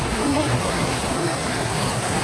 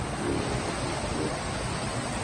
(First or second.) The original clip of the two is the second